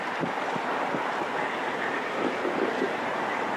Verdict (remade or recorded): recorded